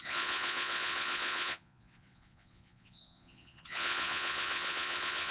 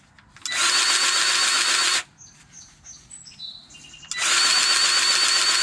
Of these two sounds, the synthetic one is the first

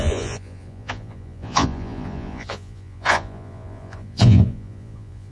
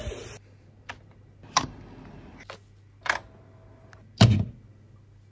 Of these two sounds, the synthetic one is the first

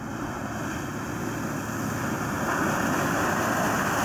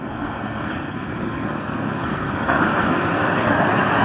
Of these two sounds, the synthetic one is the second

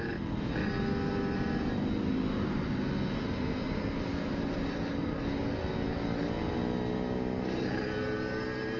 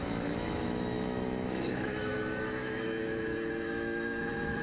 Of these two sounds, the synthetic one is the second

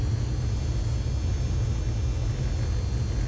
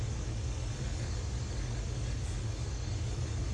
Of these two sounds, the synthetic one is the second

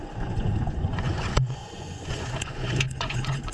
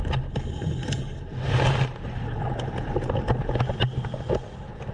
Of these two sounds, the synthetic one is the first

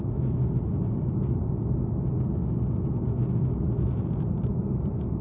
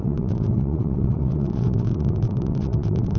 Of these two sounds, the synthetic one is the second